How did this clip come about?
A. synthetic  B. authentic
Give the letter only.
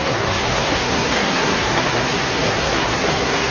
A